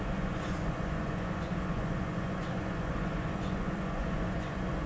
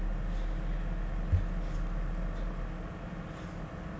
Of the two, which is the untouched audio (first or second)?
second